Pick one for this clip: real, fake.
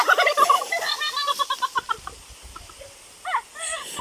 real